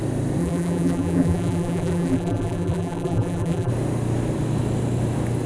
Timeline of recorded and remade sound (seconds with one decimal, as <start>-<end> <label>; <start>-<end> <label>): 0.0-0.4 recorded; 0.4-3.7 remade; 3.7-5.5 recorded